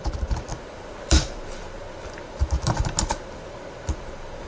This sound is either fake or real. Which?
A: fake